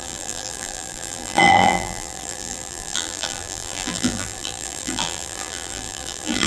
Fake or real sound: fake